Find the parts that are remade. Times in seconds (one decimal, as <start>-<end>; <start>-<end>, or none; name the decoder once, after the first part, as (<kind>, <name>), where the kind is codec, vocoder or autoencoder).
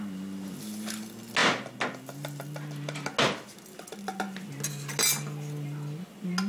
none